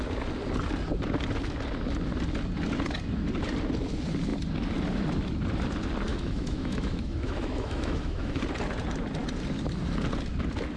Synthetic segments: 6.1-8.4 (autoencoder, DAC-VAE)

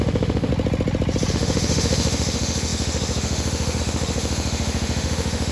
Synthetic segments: 0.0-0.5 (autoencoder, DAC-VAE); 1.3-5.5

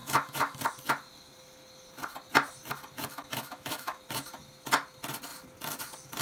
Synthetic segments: 0.0-0.6 (autoencoder, DAC-VAE); 3.1-4.0

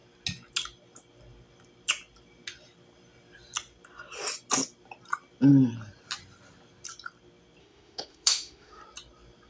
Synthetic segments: 7.6-8.8 (autoencoder, DAC-VAE)

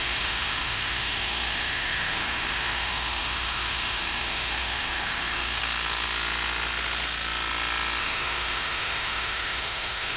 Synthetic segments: 0.0-5.6 (autoencoder, DAC-VAE); 8.0-10.2